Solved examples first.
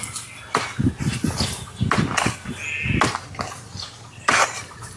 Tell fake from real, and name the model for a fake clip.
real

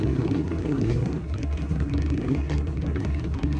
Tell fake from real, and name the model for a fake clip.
fake, codec, SNAC